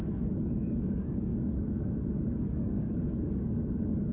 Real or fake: fake